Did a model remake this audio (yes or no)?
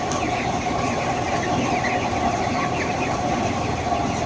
no